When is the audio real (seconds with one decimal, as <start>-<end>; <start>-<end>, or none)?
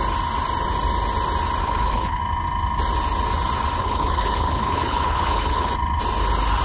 0.0-1.6; 2.2-3.8; 5.7-6.6